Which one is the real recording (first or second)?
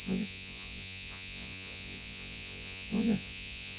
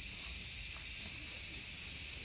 second